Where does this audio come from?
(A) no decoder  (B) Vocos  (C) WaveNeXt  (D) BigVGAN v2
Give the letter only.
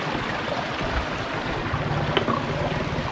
A